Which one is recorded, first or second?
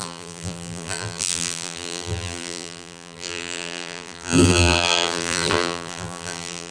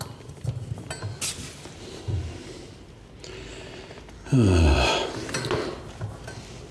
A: second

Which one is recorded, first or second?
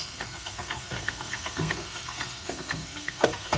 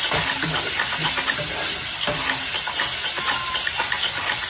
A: second